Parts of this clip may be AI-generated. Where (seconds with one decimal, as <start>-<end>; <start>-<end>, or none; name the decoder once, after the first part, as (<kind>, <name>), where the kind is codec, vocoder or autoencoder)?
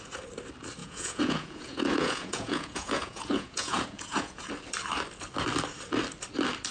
0.8-4.5 (vocoder, Vocos)